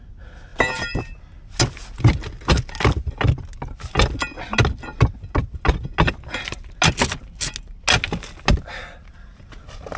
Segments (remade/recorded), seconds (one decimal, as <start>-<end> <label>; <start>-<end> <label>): 0.0-10.0 recorded